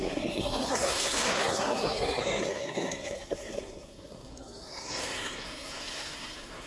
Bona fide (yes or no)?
no